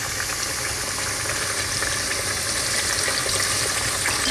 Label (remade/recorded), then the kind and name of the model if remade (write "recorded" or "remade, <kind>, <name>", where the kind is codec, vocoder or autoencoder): recorded